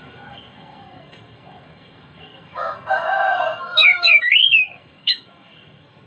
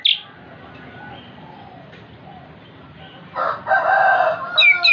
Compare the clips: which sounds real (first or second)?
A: second